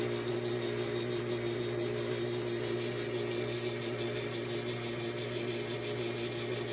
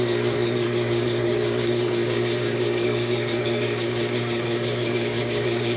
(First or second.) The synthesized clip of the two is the second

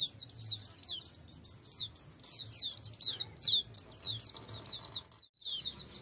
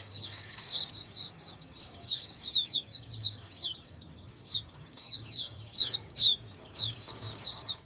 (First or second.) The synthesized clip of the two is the second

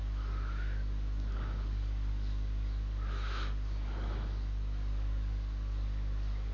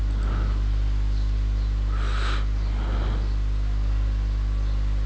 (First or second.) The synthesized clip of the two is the first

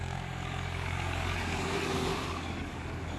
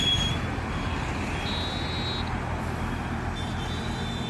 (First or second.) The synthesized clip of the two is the first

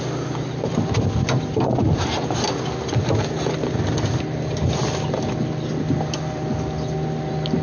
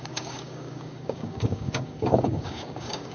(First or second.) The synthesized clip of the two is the second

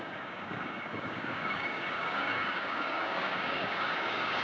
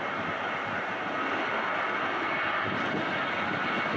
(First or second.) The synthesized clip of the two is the first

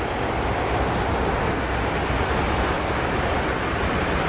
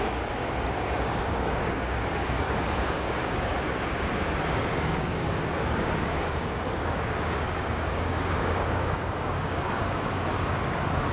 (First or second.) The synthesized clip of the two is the second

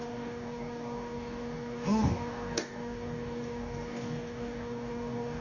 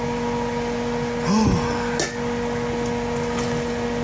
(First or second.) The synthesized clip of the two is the first